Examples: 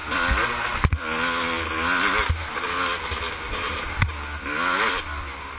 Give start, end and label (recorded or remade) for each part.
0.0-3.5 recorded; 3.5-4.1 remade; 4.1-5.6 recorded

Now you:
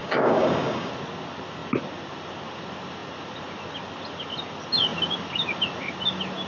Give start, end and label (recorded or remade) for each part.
0.0-0.9 remade; 0.9-6.5 recorded

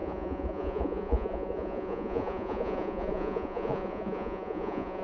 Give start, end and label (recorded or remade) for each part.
0.0-5.0 remade

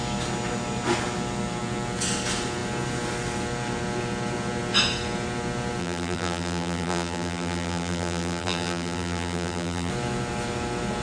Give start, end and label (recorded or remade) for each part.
0.0-5.8 recorded; 5.8-9.9 remade; 9.9-11.0 recorded

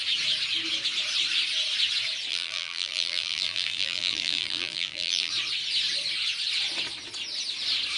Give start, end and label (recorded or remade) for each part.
0.0-2.3 recorded; 2.3-5.3 remade; 5.3-8.0 recorded

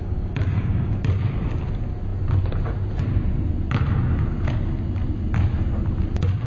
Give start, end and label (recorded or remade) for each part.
0.0-1.0 remade; 1.0-6.5 recorded

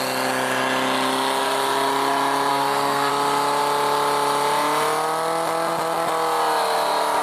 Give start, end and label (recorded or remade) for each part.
0.0-2.5 recorded; 2.5-3.1 remade; 3.1-7.2 recorded